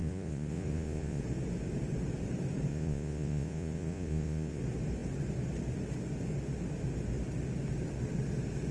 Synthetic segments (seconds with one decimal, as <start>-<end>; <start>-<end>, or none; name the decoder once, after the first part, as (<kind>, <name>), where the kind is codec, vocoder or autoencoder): 0.0-1.2 (vocoder, Vocos); 2.7-4.6